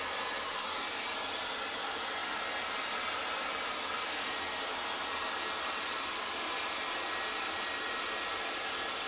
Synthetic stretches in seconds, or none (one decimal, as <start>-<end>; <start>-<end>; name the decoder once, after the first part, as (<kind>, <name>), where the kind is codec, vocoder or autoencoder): none